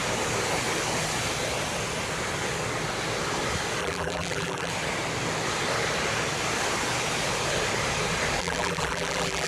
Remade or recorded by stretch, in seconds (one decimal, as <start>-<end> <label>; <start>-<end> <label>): 0.0-3.8 recorded; 3.8-4.7 remade; 4.7-8.4 recorded; 8.4-9.5 remade